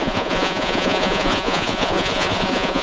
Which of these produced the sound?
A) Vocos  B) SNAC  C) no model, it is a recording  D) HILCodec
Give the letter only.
A